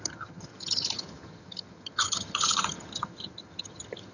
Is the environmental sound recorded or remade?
remade